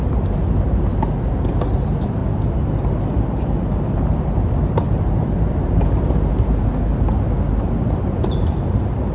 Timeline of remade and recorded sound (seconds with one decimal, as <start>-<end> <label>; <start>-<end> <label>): 0.0-2.2 remade; 2.2-4.9 recorded; 4.9-6.3 remade; 6.3-7.8 recorded; 7.8-9.1 remade

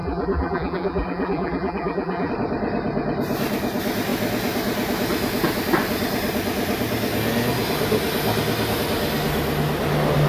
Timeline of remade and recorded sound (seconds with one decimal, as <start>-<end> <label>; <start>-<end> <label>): 0.0-2.3 remade; 2.3-10.3 recorded